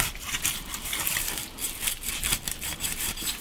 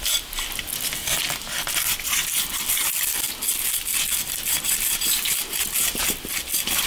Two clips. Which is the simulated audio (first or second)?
first